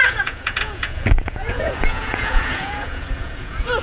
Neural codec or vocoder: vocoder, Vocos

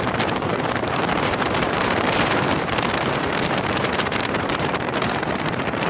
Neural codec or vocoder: vocoder, BigVGAN v2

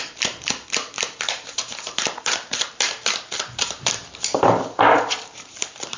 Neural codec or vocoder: vocoder, BigVGAN v2